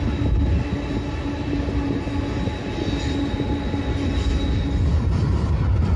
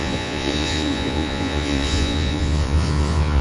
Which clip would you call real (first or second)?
first